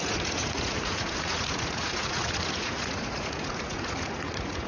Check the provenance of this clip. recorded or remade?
remade